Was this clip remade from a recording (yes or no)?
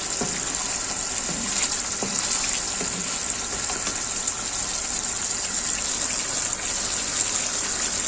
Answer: no